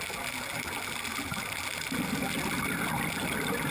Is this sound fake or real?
real